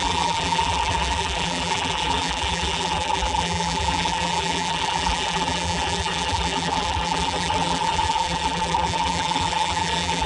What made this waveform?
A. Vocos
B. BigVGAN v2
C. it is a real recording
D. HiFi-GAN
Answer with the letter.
B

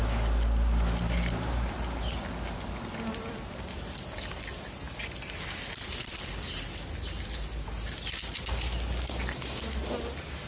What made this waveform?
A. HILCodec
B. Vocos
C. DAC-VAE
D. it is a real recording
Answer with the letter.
D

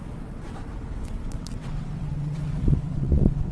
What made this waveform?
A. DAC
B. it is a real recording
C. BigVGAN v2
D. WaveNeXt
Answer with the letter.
D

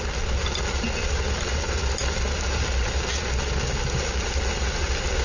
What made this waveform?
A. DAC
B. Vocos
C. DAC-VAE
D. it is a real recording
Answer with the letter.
D